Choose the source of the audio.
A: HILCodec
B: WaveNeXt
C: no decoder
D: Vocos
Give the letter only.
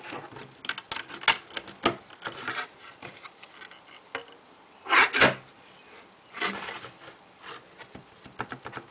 C